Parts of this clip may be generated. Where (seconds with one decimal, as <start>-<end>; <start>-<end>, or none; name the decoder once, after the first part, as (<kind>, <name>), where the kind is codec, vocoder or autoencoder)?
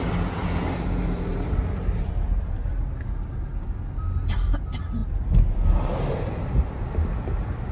1.3-2.7 (vocoder, BigVGAN v2); 5.0-6.8